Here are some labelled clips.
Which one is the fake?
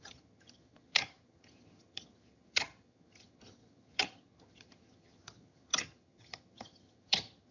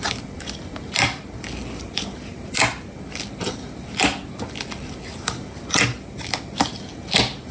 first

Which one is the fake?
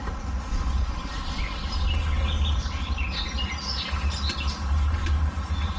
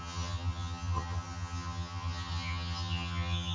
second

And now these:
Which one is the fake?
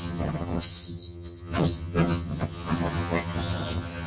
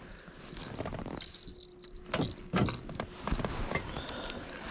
first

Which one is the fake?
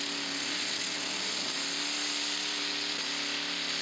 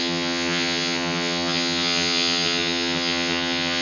second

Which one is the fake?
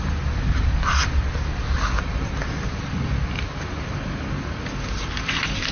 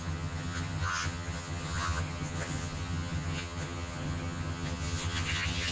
second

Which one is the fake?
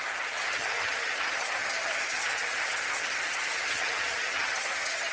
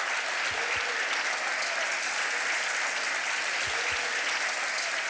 first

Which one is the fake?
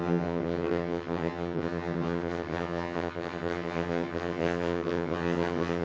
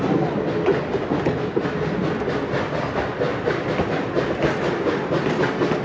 first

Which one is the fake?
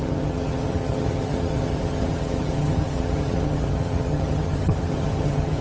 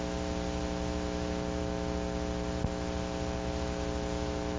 first